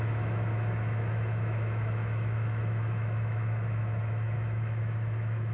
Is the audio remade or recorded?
remade